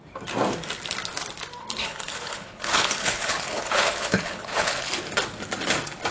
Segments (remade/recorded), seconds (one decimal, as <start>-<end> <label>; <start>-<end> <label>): 0.0-1.6 recorded; 1.6-4.9 remade; 4.9-6.1 recorded